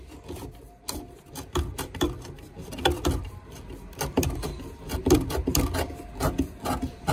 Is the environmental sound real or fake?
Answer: real